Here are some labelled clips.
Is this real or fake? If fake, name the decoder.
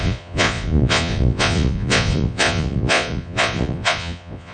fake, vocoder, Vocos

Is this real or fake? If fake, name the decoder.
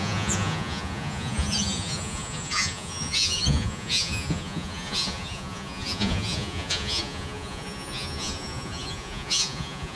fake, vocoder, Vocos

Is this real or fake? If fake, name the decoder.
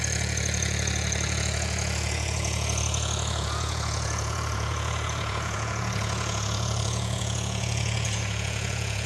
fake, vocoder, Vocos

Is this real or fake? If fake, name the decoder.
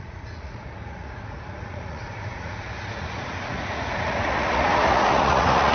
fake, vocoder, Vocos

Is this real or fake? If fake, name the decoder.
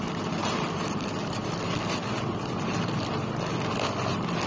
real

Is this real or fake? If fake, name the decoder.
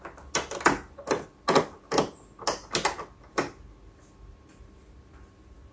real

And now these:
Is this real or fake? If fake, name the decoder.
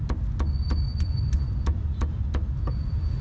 real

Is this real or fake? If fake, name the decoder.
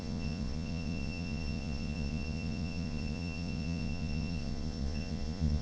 fake, vocoder, Vocos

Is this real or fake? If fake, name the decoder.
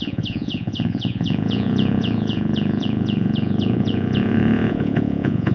fake, vocoder, Vocos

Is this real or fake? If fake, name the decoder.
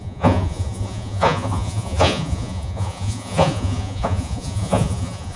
fake, vocoder, Vocos